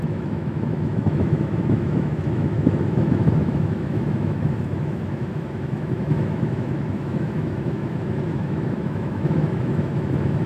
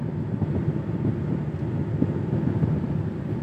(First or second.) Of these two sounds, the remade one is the first